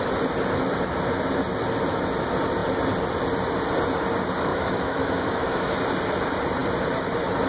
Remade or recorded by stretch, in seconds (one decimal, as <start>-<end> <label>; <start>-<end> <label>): 0.0-4.5 recorded; 4.5-5.7 remade; 5.7-7.5 recorded

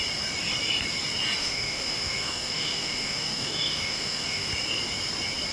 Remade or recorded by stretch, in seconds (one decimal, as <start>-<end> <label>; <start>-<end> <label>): 0.0-1.4 recorded; 1.4-4.5 remade; 4.5-5.5 recorded

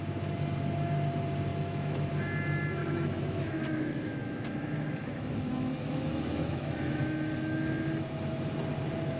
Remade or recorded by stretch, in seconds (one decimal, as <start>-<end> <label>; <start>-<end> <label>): 0.0-1.5 recorded; 1.5-2.1 remade; 2.1-2.8 recorded; 2.8-7.0 remade; 7.0-9.2 recorded